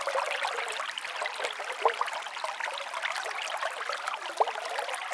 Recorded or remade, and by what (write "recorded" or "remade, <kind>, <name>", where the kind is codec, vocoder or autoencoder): recorded